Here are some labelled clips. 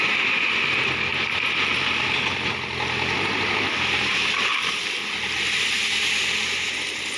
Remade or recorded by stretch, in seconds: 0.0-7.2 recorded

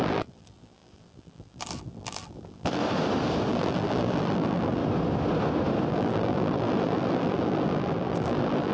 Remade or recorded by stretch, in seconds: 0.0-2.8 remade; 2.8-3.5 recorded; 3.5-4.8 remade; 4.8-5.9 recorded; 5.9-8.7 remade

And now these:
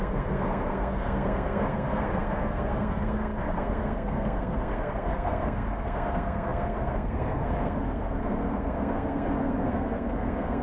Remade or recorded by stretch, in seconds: 0.0-10.6 remade

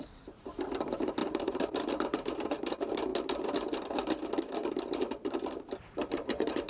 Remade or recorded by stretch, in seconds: 0.0-3.1 remade; 3.1-4.7 recorded; 4.7-6.7 remade

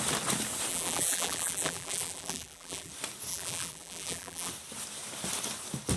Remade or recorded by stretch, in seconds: 0.0-0.7 recorded; 0.7-2.9 remade; 2.9-3.3 recorded; 3.3-4.5 remade; 4.5-6.0 recorded

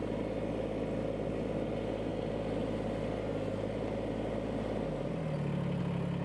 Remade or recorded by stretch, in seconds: 0.0-6.2 recorded

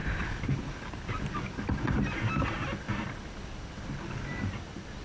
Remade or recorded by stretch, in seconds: 0.0-5.0 recorded